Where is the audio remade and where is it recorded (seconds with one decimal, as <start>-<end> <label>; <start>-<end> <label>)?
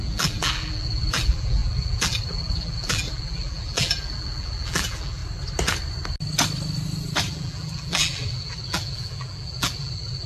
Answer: 0.0-5.2 remade; 5.2-7.3 recorded; 7.3-10.3 remade